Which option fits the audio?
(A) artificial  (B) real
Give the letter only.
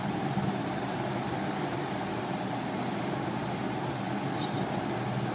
B